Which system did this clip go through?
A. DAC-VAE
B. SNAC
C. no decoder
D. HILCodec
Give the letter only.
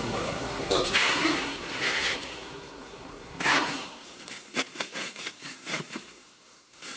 B